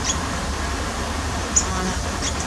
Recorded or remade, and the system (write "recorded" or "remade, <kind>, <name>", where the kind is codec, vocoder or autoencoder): recorded